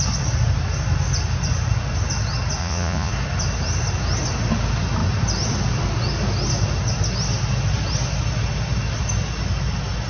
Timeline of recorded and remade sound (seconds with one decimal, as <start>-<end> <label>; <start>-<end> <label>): 0.0-2.6 recorded; 2.6-3.1 remade; 3.1-10.1 recorded